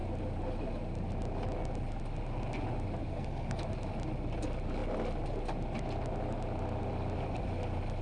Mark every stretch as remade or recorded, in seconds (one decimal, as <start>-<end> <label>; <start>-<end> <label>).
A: 0.0-3.1 recorded; 3.1-3.6 remade; 3.6-8.0 recorded